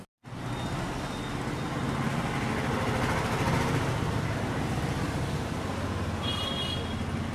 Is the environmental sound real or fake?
real